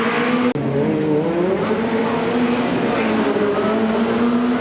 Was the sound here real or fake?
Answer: real